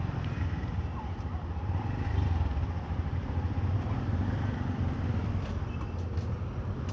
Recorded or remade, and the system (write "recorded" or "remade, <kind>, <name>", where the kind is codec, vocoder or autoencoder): recorded